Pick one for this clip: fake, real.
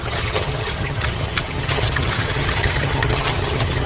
fake